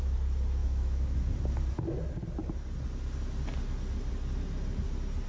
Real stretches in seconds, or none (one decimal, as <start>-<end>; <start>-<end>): 0.0-0.6; 1.2-5.3